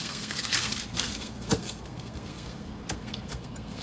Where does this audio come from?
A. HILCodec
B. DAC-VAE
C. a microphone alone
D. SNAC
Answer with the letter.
D